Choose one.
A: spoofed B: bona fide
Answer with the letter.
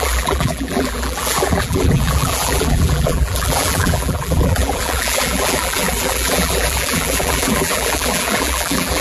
A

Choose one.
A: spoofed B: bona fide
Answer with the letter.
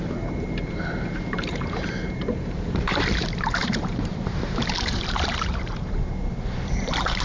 A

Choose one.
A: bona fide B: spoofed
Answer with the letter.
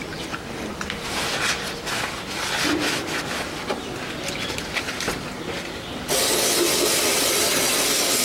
A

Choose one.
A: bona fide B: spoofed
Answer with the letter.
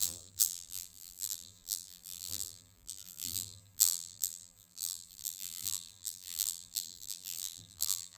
B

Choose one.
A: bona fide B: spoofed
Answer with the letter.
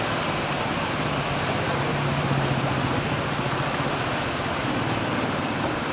B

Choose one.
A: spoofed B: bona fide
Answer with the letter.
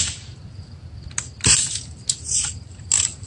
A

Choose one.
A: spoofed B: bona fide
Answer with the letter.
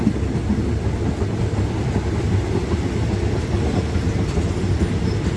B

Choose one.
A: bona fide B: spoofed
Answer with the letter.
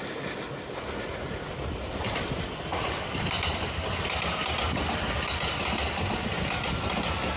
A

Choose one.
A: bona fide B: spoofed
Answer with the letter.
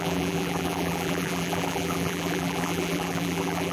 B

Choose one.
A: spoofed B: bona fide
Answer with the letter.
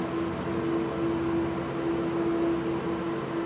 B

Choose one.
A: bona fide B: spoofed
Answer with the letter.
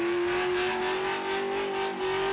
A